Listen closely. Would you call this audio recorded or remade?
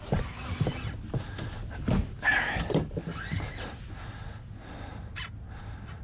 recorded